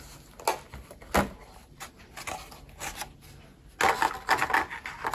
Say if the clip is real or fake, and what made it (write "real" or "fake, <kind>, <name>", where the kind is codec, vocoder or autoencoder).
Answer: real